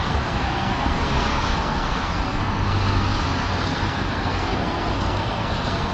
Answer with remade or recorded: remade